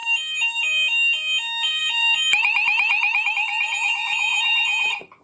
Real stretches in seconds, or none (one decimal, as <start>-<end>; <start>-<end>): 0.0-1.7; 3.3-4.3